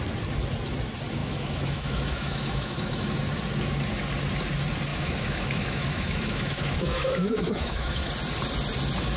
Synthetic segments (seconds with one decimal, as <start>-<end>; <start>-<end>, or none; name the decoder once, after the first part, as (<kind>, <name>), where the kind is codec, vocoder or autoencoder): 1.2-3.2 (autoencoder, DAC-VAE); 4.9-8.1